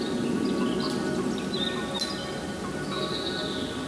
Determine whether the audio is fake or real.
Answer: fake